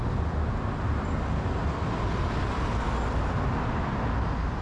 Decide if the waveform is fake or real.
real